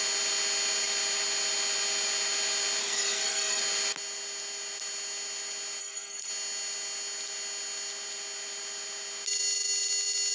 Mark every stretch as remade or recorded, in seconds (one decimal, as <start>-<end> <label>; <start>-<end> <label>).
0.0-2.8 recorded; 2.8-3.6 remade; 3.6-5.8 recorded; 5.8-6.3 remade; 6.3-10.3 recorded